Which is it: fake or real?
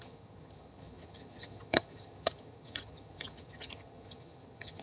fake